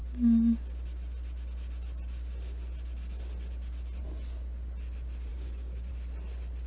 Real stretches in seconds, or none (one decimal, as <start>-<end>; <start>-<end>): 0.0-5.3; 5.9-6.7